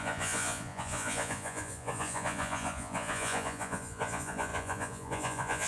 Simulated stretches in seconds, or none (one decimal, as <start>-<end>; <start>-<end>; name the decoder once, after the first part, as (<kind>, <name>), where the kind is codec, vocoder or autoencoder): 0.0-5.7 (vocoder, Vocos)